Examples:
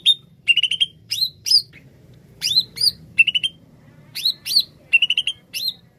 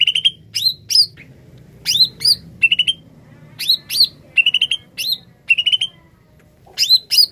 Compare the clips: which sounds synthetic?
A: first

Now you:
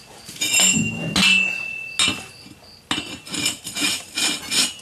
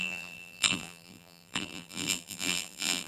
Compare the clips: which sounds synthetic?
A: second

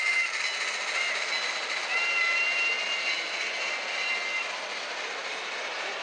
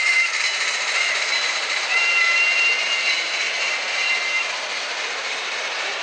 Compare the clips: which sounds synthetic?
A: second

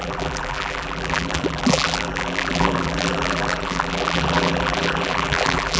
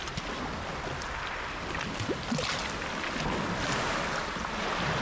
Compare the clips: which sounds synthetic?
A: first